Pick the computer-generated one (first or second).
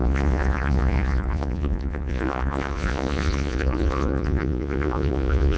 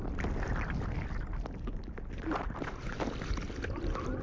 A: first